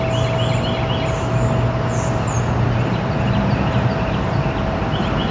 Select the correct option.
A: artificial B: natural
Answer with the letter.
B